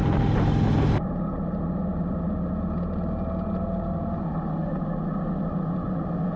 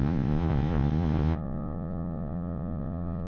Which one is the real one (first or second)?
first